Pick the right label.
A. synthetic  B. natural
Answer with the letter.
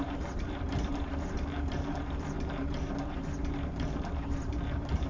A